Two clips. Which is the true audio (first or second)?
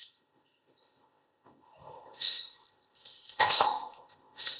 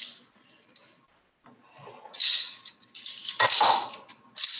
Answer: second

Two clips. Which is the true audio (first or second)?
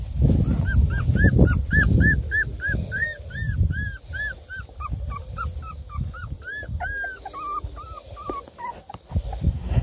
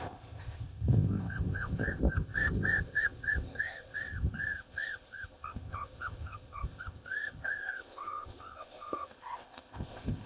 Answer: first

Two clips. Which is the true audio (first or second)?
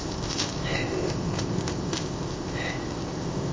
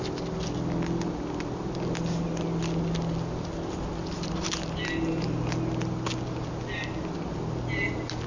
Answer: second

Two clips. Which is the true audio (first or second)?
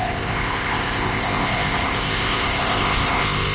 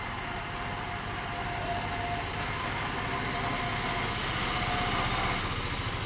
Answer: second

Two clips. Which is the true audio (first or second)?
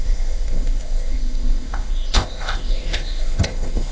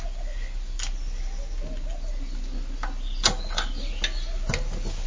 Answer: second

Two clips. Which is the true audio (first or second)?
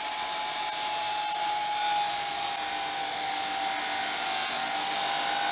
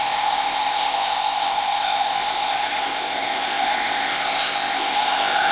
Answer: first